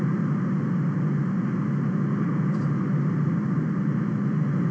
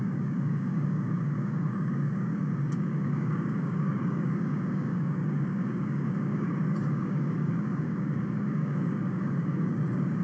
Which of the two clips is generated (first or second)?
second